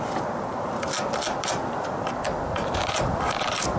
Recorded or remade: remade